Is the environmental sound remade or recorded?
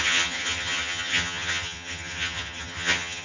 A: remade